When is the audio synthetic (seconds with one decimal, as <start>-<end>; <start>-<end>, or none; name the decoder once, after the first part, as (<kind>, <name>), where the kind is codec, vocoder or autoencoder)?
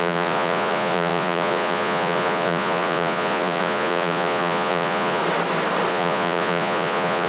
0.0-5.2 (vocoder, Vocos); 5.9-7.3